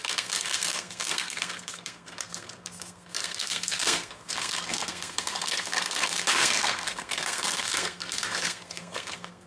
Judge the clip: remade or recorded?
remade